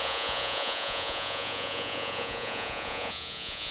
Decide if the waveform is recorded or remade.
remade